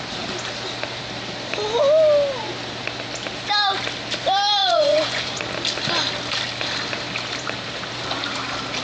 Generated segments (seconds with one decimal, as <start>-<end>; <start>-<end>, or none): 4.6-5.4